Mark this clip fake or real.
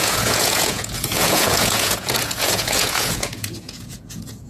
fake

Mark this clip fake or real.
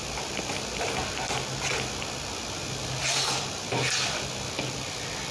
real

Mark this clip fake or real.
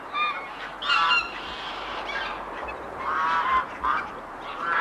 fake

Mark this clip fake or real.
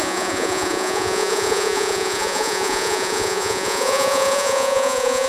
fake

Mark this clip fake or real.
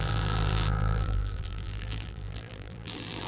fake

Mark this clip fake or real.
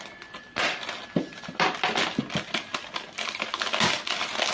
real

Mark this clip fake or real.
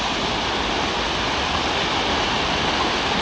real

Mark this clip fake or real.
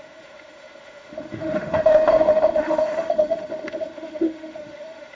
fake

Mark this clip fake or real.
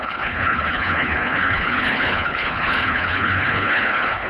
fake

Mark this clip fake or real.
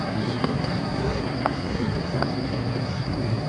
fake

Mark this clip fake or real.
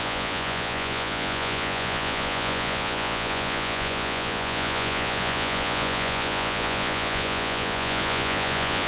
fake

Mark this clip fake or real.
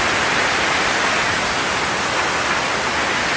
real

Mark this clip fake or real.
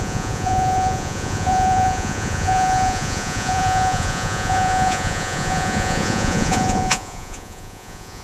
fake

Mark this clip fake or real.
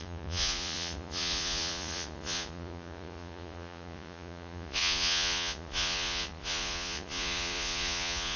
fake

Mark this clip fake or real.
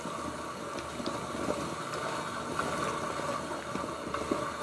real